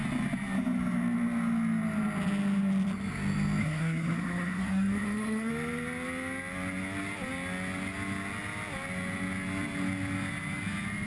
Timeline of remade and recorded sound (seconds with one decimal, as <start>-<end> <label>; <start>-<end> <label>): 0.0-3.6 recorded; 3.6-5.5 remade; 5.5-11.1 recorded

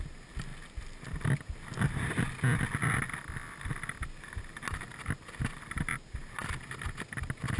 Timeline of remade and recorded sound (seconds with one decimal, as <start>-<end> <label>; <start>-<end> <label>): 0.0-7.6 recorded